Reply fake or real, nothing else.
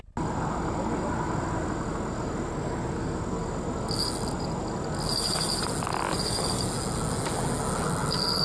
real